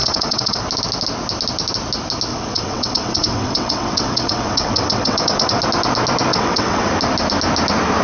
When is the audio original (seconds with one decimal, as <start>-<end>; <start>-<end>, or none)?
0.6-2.3; 5.6-6.3; 6.9-8.0